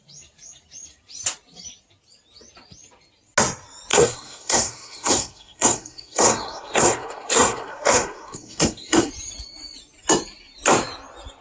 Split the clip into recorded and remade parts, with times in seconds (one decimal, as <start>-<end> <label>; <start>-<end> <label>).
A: 0.0-3.9 recorded; 3.9-9.1 remade; 9.1-11.4 recorded